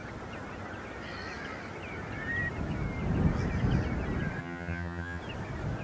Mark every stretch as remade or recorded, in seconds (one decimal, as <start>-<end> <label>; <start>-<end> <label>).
0.0-4.4 recorded; 4.4-5.2 remade; 5.2-5.8 recorded